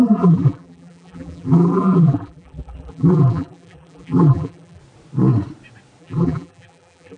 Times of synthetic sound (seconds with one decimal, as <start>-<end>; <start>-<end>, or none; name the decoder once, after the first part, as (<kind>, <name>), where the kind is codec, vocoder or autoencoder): 0.0-4.8 (vocoder, BigVGAN v2); 6.0-7.2